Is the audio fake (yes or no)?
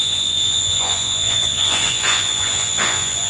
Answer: yes